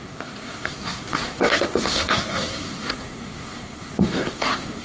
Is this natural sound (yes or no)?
no